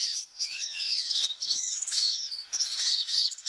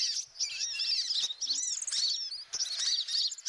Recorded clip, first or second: second